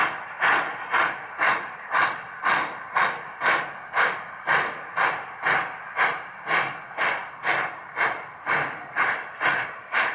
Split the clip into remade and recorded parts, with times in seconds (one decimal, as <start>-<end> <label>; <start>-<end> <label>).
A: 0.0-10.1 recorded

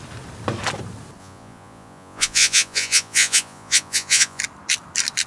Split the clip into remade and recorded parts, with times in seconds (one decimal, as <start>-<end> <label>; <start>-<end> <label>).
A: 0.0-1.2 recorded; 1.2-4.4 remade; 4.4-5.3 recorded

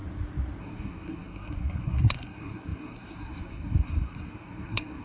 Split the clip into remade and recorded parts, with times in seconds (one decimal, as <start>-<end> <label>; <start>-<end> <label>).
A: 0.0-0.6 recorded; 0.6-5.0 remade